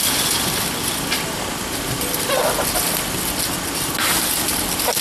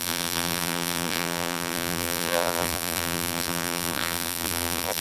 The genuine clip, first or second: first